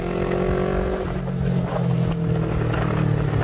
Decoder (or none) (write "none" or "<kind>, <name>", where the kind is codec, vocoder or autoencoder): none